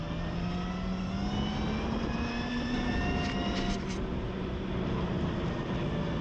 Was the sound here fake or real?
real